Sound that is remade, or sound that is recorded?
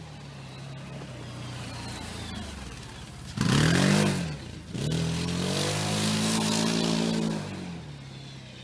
recorded